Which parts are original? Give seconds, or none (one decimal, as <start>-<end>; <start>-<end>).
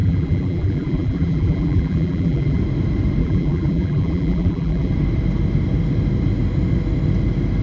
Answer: 2.6-3.2; 4.9-7.6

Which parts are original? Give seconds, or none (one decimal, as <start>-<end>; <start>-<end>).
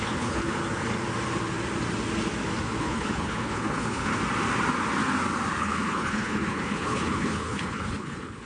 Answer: 0.6-2.8; 4.2-5.6